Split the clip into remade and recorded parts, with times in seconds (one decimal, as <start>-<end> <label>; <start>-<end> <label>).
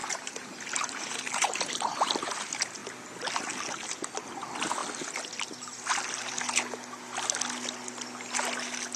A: 0.0-2.1 remade; 2.1-9.0 recorded